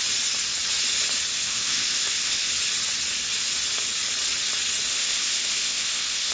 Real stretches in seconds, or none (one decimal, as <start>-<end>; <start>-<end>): 0.0-1.3; 2.5-4.9